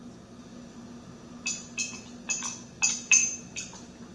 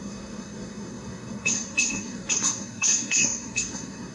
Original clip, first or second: first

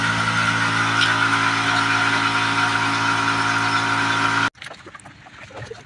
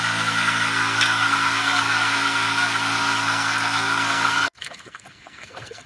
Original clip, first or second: first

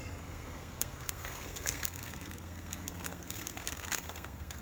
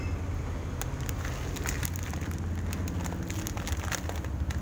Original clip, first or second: second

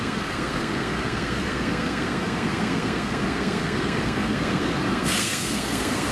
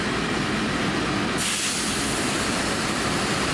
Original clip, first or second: second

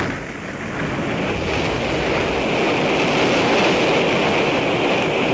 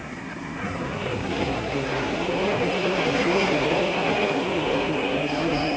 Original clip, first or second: first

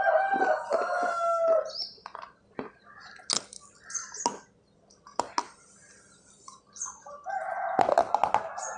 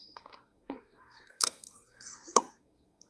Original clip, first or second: first